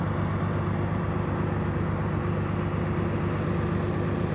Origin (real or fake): real